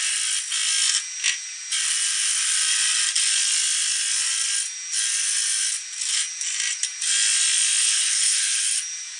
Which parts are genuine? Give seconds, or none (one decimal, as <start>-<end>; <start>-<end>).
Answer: 0.0-7.8; 8.6-9.2